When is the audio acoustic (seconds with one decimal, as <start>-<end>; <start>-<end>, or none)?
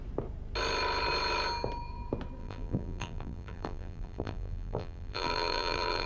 0.0-2.4